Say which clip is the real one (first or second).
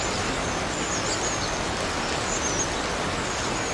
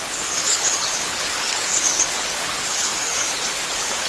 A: first